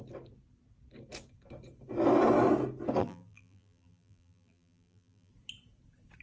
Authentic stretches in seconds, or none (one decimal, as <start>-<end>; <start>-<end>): 0.0-3.0; 5.3-6.2